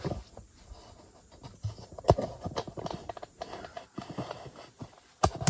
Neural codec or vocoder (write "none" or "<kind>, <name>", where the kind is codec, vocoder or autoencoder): none